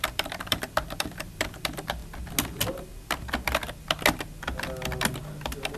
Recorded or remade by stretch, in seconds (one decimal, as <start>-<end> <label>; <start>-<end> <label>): 0.0-2.0 remade; 2.0-5.8 recorded